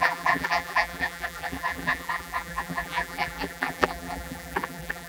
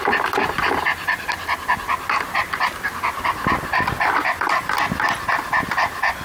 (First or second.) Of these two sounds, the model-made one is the first